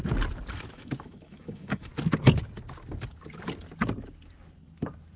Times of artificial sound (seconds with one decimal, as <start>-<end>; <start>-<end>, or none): 0.7-1.9